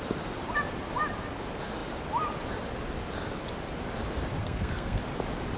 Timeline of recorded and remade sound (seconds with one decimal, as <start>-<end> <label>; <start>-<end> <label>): 0.0-4.4 recorded; 4.4-5.0 remade; 5.0-5.6 recorded